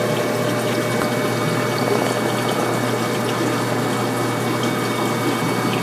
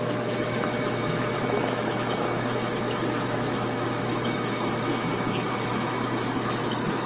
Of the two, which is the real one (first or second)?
first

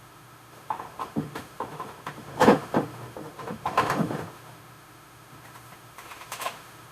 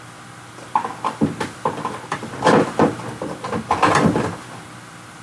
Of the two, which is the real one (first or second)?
second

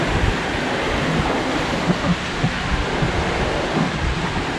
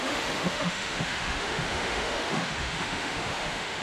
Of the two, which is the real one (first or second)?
first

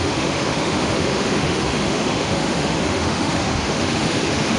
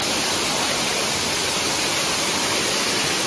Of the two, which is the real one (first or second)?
second